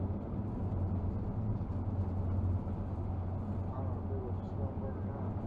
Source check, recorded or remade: recorded